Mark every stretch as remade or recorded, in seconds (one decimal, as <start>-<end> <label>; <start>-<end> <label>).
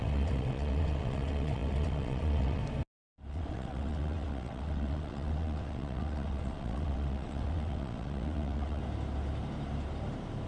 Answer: 0.0-2.6 remade; 2.6-3.3 recorded; 3.3-8.8 remade; 8.8-10.5 recorded